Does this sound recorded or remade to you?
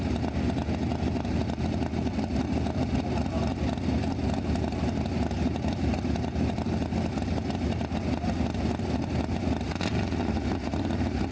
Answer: recorded